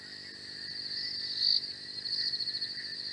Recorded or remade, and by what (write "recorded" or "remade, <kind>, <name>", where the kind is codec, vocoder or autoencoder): recorded